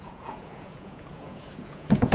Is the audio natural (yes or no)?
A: no